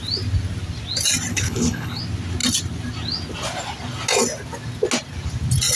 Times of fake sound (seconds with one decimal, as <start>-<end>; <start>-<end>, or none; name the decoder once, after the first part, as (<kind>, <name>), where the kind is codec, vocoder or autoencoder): 1.3-2.0 (codec, HILCodec)